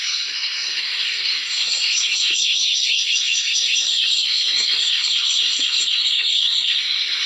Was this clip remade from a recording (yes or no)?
yes